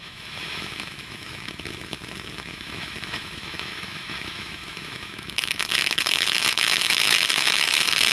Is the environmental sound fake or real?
fake